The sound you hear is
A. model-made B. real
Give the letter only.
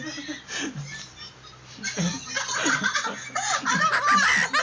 B